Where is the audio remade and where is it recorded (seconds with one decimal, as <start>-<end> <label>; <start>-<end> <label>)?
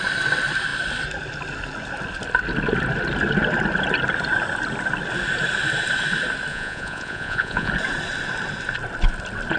0.0-6.5 recorded; 6.5-7.7 remade; 7.7-9.6 recorded